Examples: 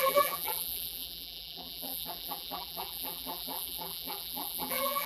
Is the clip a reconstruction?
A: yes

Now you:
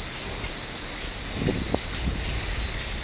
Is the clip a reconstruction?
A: no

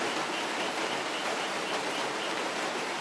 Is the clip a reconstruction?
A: yes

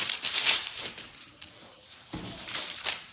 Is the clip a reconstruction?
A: yes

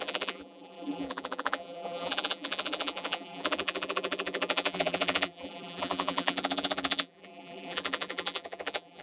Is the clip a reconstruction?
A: yes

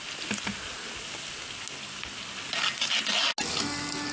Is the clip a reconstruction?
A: no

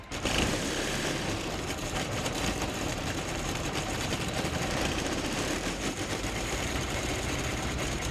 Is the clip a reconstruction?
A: yes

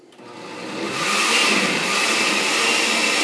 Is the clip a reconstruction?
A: yes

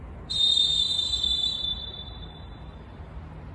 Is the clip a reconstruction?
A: yes